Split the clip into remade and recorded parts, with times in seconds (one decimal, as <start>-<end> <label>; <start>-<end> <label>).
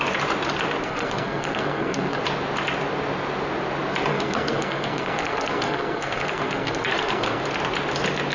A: 0.0-0.8 recorded; 0.8-2.2 remade; 2.2-4.1 recorded; 4.1-7.4 remade; 7.4-8.3 recorded